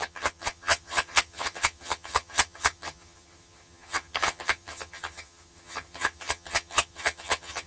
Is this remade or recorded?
remade